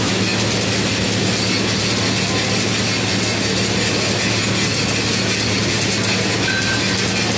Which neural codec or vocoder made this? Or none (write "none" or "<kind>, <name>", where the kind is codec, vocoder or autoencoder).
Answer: none